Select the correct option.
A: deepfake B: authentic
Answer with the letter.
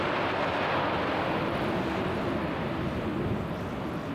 B